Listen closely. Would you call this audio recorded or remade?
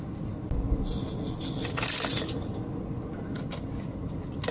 recorded